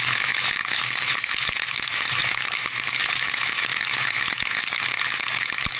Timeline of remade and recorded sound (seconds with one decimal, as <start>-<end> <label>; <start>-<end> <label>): 0.0-5.8 remade